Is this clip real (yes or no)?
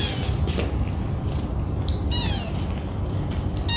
yes